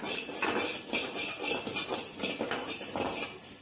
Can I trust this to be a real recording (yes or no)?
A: yes